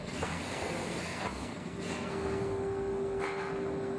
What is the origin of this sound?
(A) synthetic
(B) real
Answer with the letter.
A